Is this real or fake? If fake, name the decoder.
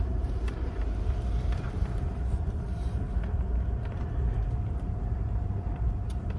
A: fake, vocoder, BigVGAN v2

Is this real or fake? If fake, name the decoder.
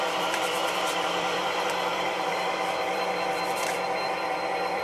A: fake, vocoder, BigVGAN v2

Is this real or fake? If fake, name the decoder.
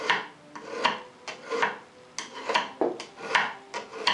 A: real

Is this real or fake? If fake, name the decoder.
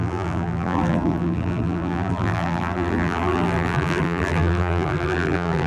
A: fake, vocoder, BigVGAN v2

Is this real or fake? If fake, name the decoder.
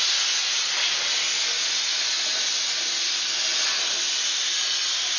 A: real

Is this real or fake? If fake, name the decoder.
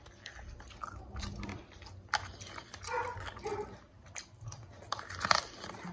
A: real